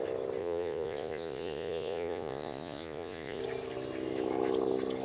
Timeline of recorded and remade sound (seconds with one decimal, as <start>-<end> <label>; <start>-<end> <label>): 0.0-0.4 recorded; 0.4-3.4 remade; 3.4-5.0 recorded